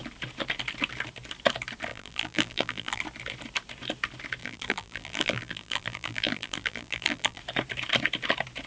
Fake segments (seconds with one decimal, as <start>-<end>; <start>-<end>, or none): 1.9-3.0; 4.4-7.4